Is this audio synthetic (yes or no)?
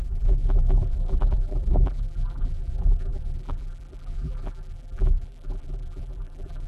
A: yes